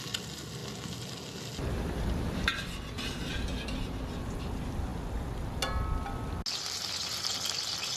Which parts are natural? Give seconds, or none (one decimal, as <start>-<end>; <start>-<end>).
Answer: 0.0-8.0